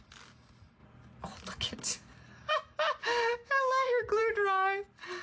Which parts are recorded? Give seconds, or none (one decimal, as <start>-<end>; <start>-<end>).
0.0-3.4; 4.2-5.2